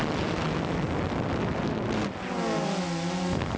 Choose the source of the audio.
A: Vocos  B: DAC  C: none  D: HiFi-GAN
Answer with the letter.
C